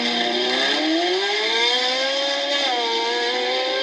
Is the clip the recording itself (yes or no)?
yes